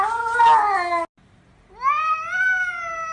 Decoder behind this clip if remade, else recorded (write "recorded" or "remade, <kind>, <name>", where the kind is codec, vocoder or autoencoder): recorded